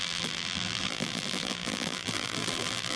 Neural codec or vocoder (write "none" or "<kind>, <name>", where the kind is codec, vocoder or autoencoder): vocoder, BigVGAN v2